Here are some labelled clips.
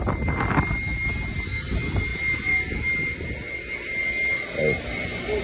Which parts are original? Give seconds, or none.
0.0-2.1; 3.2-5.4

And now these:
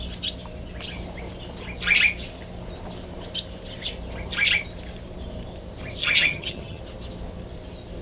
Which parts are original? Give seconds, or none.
0.0-6.0; 6.8-8.0

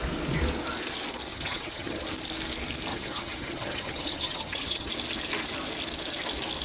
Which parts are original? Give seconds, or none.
0.0-1.3; 2.0-2.9; 4.9-6.6

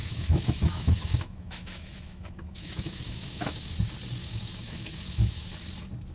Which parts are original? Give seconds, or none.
3.7-4.2; 5.5-6.1

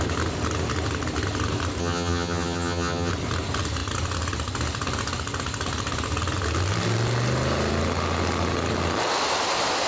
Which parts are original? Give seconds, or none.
0.0-1.8; 3.1-9.9

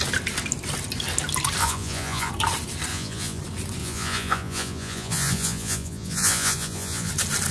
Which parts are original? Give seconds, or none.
0.0-1.6; 2.3-2.9; 3.4-3.8; 7.1-7.5